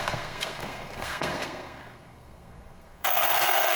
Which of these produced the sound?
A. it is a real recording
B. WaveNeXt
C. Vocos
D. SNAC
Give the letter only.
D